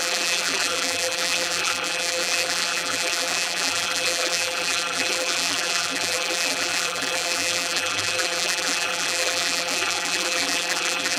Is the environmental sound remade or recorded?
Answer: remade